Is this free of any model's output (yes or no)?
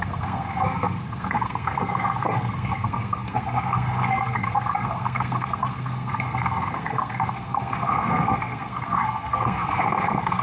no